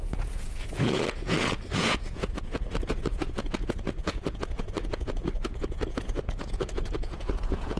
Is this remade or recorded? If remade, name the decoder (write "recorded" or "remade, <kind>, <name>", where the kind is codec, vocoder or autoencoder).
remade, vocoder, Vocos